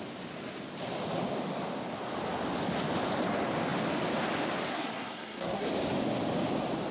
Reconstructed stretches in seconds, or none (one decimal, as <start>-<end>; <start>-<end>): 4.7-5.7